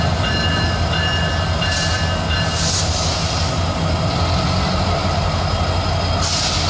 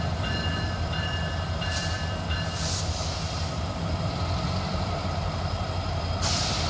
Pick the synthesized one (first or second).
second